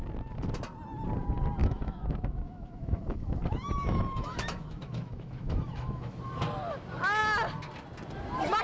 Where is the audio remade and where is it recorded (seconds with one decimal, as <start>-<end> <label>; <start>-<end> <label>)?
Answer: 0.0-1.6 recorded; 1.6-6.2 remade; 6.2-8.6 recorded